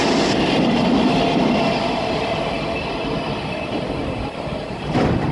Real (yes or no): yes